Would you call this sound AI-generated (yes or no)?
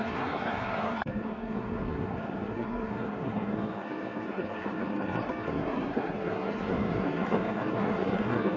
yes